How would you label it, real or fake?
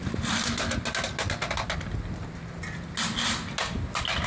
real